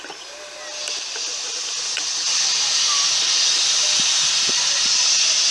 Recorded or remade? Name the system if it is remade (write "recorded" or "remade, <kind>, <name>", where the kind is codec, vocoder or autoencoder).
recorded